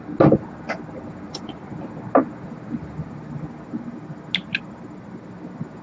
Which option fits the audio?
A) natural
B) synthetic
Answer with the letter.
A